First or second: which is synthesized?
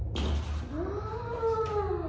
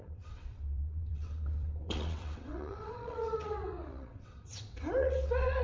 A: second